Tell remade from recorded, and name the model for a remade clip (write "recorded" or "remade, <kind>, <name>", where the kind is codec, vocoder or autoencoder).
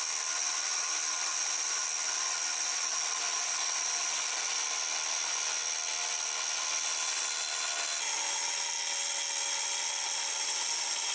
recorded